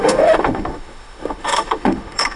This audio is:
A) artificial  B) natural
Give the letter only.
A